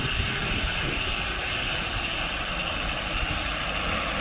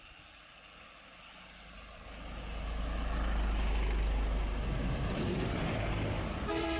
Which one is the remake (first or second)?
first